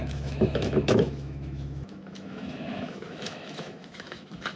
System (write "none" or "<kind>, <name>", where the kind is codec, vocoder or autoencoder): autoencoder, DAC-VAE